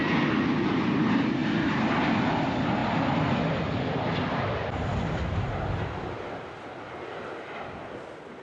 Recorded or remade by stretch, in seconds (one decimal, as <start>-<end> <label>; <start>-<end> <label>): 0.0-8.4 recorded